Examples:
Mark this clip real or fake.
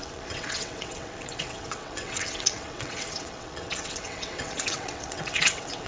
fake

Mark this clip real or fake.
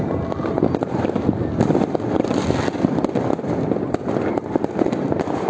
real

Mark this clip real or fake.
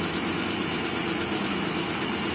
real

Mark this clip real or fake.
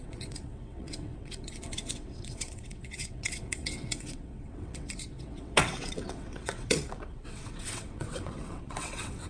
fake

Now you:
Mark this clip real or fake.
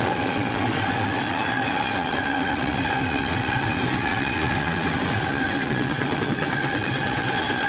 fake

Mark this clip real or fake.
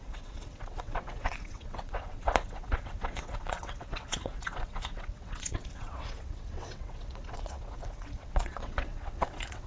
fake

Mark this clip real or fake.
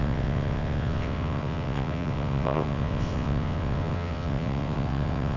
fake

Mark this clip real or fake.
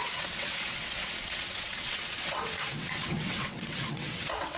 fake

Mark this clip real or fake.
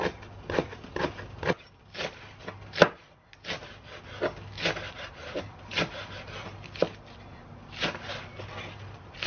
real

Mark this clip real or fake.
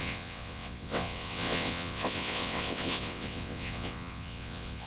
fake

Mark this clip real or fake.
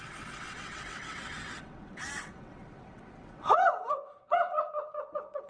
fake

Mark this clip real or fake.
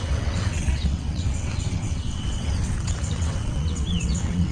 fake